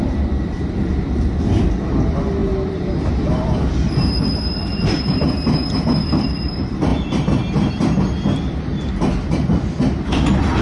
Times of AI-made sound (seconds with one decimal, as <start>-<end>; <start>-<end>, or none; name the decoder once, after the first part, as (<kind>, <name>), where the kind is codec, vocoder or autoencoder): 0.0-6.9 (vocoder, BigVGAN v2); 7.7-10.6